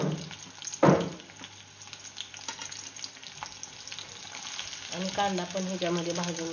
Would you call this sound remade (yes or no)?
no